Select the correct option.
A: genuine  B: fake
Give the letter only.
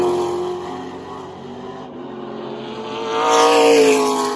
A